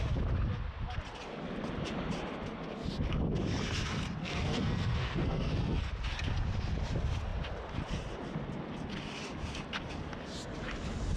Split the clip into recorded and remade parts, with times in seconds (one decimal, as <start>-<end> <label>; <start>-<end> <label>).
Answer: 0.0-4.2 recorded; 4.2-5.9 remade; 5.9-11.2 recorded